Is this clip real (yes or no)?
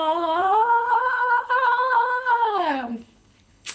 no